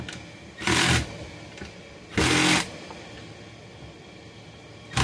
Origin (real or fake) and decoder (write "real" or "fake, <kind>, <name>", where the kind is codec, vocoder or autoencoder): real